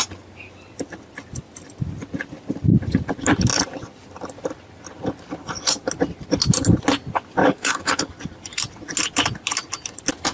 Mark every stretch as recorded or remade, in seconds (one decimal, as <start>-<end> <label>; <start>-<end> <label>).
0.0-7.4 recorded; 7.4-8.0 remade; 8.0-10.3 recorded